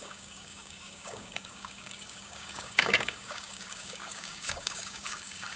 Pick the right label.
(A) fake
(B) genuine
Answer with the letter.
A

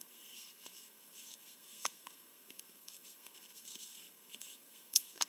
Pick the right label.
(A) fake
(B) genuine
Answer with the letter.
A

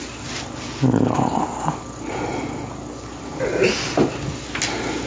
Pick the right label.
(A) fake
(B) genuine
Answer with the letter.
B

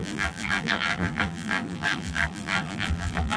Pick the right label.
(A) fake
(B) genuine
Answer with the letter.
A